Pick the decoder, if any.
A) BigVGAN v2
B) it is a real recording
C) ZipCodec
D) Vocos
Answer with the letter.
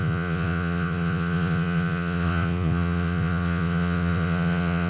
D